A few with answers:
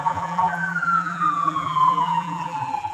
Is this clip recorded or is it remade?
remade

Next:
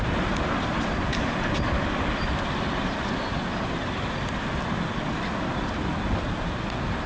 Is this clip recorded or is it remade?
recorded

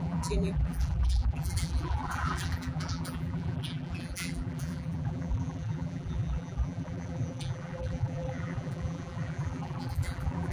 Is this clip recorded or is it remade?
remade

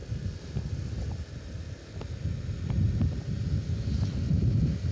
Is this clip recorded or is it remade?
recorded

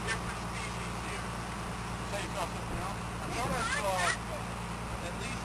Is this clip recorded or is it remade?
recorded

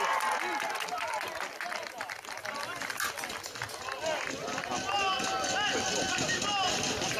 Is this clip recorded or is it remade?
recorded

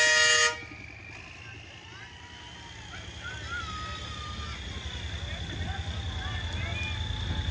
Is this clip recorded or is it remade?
recorded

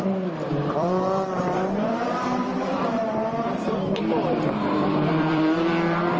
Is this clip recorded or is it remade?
remade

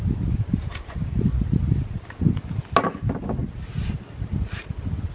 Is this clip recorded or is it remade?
recorded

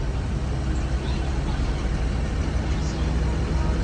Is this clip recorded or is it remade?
recorded